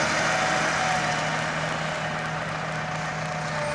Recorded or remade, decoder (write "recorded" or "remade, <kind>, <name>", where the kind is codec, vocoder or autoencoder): recorded